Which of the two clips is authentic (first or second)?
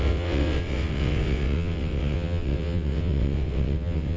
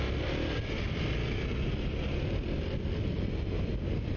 second